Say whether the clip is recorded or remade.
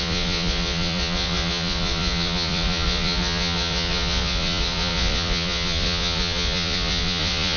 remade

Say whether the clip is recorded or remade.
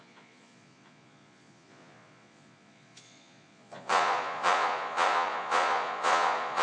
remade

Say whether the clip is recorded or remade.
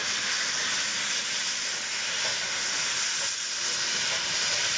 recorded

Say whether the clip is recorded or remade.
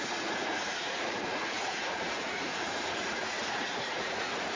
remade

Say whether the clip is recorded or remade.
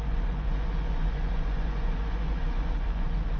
remade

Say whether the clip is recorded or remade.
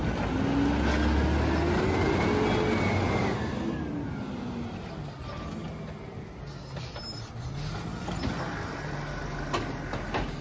recorded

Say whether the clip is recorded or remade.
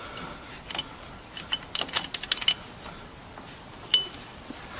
recorded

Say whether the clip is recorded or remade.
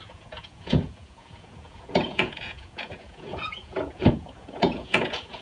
remade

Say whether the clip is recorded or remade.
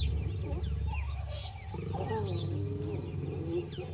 recorded